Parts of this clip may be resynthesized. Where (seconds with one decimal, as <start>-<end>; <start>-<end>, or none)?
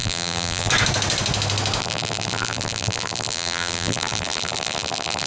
0.0-0.7; 1.8-5.3